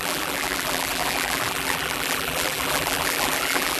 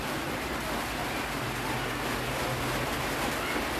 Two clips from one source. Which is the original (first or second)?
second